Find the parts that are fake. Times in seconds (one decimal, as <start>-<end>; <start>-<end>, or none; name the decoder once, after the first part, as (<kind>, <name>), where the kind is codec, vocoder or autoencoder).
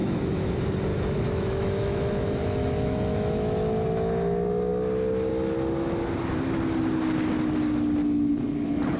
0.0-0.5 (autoencoder, DAC-VAE); 0.9-3.7